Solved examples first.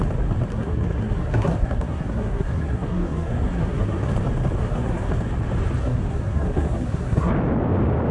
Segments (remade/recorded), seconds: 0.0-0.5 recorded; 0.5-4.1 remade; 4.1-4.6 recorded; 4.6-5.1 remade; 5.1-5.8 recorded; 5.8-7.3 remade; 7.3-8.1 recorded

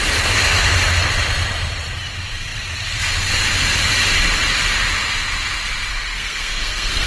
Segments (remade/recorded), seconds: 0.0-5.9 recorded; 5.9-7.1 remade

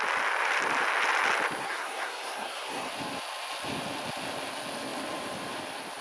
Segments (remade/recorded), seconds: 0.0-1.6 recorded; 1.6-2.9 remade; 2.9-6.0 recorded